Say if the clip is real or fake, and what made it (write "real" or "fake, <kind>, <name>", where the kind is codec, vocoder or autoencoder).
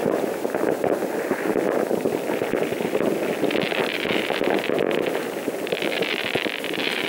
real